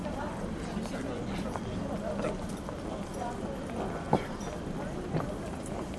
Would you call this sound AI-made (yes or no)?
no